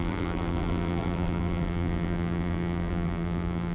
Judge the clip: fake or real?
fake